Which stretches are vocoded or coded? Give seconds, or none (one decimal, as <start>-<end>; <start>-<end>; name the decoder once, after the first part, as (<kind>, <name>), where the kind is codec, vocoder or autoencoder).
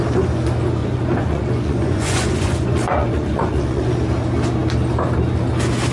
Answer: 0.8-3.9 (vocoder, Vocos)